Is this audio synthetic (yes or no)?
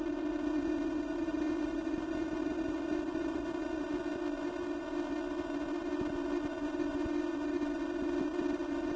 no